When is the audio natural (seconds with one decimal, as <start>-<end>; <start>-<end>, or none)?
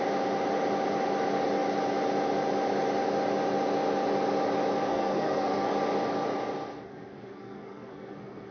0.0-4.9; 5.7-6.9